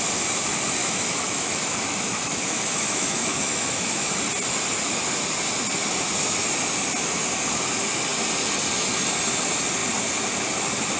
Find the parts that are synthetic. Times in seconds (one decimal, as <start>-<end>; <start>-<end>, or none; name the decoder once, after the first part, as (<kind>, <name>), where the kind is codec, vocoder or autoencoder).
0.8-4.1 (autoencoder, DAC-VAE)